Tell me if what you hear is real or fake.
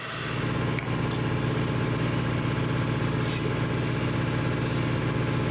real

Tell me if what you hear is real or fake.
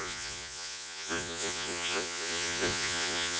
fake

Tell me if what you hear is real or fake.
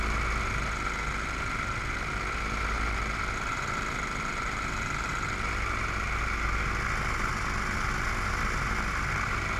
real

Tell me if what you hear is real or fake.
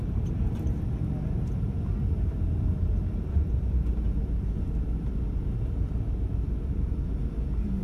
fake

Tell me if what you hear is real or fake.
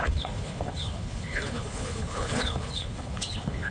fake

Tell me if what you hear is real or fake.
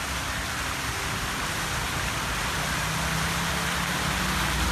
real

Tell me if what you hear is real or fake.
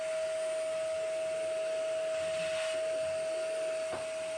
real